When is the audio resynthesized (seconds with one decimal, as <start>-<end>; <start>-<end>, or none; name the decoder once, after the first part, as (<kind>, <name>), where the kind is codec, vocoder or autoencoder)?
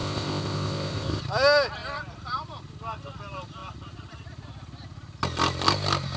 0.0-1.2 (codec, ZipCodec)